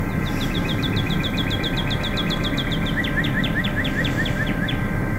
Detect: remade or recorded remade